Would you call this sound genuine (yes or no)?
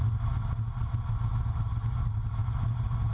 yes